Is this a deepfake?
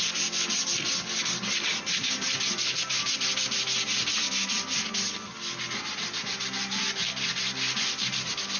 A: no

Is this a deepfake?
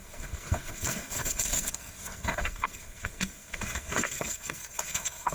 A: yes